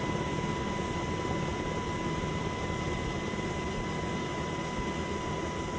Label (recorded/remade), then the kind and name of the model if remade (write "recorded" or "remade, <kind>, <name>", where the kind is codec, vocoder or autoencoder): recorded